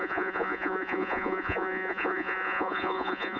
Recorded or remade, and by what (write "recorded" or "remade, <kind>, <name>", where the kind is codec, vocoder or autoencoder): remade, vocoder, Vocos